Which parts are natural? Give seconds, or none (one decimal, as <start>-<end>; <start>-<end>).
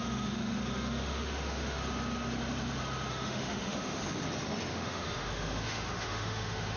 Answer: 1.8-3.1; 4.0-4.7